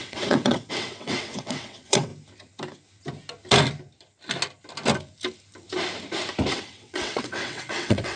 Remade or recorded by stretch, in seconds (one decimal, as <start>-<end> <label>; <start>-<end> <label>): 0.0-2.1 remade; 2.1-6.5 recorded; 6.5-8.2 remade